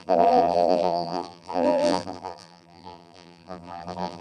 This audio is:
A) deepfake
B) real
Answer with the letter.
A